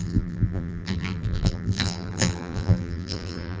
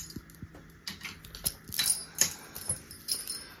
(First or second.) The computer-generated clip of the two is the first